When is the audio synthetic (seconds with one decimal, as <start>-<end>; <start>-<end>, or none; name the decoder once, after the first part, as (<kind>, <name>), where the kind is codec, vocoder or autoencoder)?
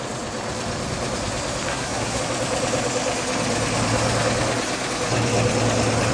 1.7-2.2 (codec, SNAC)